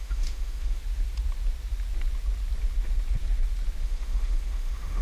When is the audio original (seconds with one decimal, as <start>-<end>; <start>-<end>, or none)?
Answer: 0.8-3.8